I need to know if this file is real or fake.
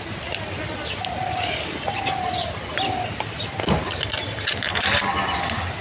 real